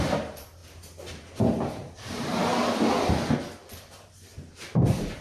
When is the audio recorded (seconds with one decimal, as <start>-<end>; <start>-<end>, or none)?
0.6-1.1; 2.5-3.8